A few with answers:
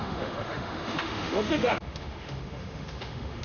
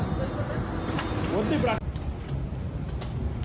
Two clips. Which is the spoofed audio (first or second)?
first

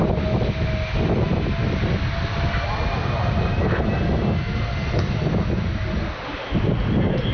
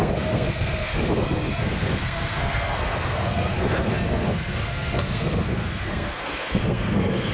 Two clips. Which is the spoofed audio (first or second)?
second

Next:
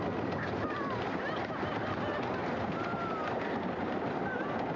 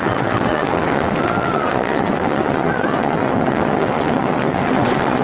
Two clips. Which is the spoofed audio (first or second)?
second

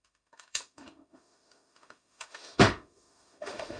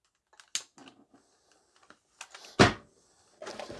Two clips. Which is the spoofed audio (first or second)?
first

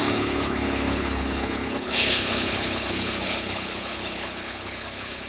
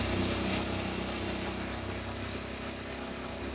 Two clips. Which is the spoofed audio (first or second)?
first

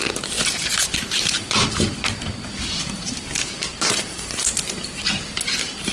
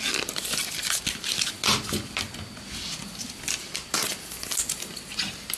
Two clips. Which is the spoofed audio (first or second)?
first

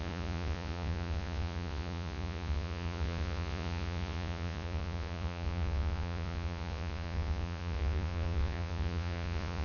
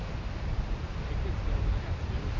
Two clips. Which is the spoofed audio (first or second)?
first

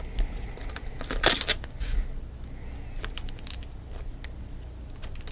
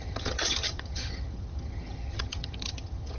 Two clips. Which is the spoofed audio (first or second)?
second